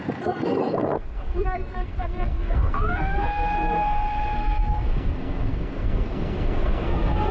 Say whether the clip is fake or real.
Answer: fake